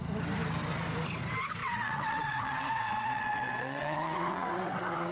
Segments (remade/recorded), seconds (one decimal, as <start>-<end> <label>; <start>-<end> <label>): 0.0-1.6 recorded; 1.6-5.1 remade